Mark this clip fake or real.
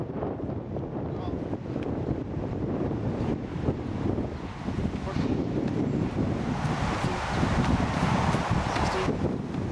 fake